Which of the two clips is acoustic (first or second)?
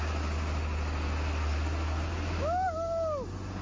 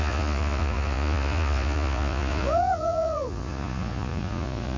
first